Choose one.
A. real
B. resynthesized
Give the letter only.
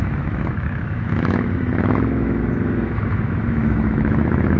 B